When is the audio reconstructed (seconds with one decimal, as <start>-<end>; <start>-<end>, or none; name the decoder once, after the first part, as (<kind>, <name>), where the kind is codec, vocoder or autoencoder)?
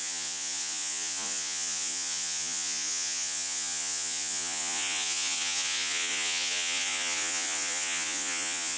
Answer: 0.0-8.8 (vocoder, Vocos)